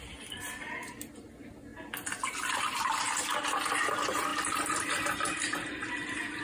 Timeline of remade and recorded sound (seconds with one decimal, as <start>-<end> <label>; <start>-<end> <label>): 0.0-1.7 recorded; 1.7-2.8 remade; 2.8-4.3 recorded; 4.3-5.0 remade; 5.0-6.4 recorded